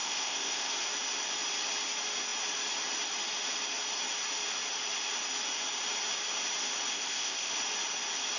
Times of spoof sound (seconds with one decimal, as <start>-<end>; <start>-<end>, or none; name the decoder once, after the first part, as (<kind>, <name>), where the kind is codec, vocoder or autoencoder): 0.0-0.7 (codec, ZipCodec); 6.9-7.5